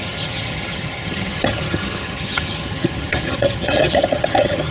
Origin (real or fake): fake